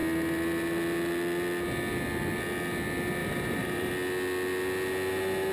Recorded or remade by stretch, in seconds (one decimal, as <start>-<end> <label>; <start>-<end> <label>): 0.0-3.2 recorded; 3.2-3.9 remade; 3.9-5.5 recorded